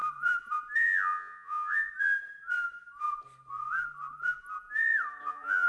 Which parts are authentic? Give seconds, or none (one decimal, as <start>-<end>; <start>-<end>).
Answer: 0.0-0.8; 1.9-5.3